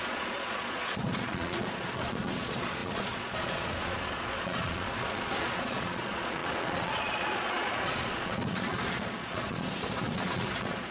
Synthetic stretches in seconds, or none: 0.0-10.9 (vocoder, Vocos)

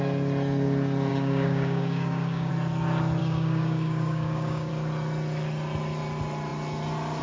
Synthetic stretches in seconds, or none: 1.1-2.5 (codec, DAC); 3.2-4.7